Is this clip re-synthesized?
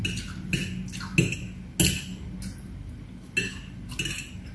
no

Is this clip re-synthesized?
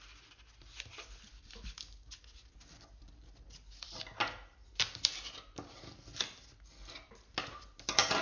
no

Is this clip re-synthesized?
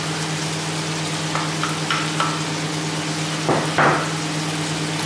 no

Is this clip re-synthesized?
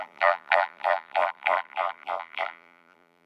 yes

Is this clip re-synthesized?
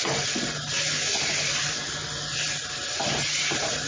no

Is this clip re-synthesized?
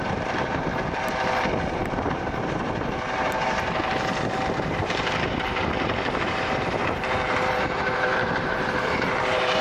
yes